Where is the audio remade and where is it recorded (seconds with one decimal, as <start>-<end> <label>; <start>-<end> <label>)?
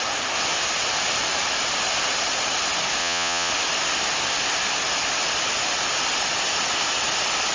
0.0-3.0 recorded; 3.0-3.5 remade; 3.5-7.5 recorded